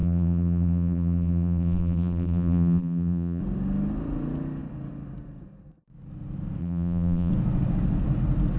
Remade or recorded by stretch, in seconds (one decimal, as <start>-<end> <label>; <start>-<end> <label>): 0.0-3.4 remade; 3.4-6.6 recorded; 6.6-7.3 remade; 7.3-8.6 recorded